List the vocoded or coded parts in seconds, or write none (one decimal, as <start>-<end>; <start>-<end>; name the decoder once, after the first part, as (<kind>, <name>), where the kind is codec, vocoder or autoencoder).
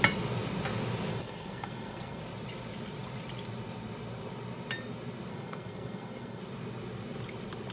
1.1-2.2 (codec, SNAC); 5.3-6.4